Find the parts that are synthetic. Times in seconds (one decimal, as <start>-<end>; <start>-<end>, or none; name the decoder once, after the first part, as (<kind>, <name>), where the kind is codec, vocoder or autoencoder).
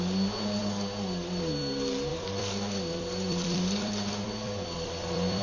2.1-5.4 (vocoder, BigVGAN v2)